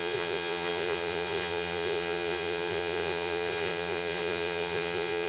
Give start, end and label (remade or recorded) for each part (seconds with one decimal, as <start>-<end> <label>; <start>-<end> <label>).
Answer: 0.0-5.3 remade